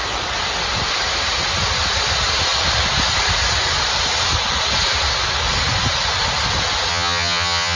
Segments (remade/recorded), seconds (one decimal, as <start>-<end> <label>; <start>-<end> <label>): 0.0-6.9 recorded; 6.9-7.8 remade